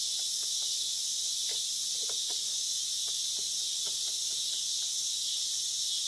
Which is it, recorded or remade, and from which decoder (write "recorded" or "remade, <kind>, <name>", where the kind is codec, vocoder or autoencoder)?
recorded